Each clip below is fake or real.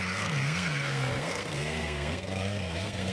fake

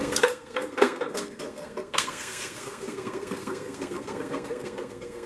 fake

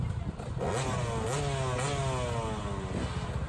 real